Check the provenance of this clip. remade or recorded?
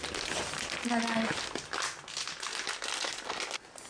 recorded